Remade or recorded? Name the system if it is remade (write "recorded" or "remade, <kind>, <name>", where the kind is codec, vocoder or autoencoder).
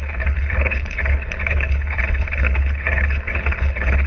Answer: remade, codec, HILCodec